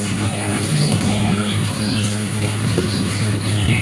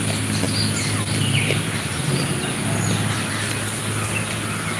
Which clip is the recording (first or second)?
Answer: second